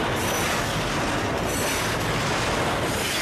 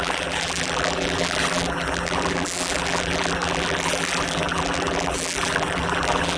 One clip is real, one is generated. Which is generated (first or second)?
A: second